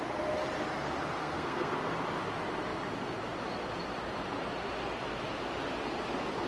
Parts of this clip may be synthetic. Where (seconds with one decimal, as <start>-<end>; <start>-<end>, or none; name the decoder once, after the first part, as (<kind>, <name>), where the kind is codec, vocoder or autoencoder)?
1.2-1.8 (codec, SNAC)